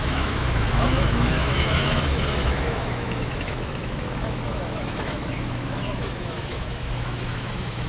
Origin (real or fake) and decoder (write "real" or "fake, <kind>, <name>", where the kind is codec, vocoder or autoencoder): fake, autoencoder, DAC-VAE